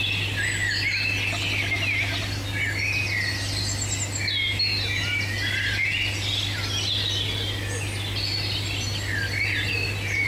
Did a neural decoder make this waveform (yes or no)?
no